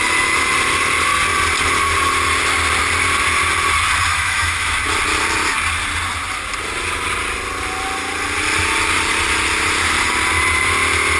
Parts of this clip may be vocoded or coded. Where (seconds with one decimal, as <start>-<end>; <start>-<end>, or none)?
4.1-4.7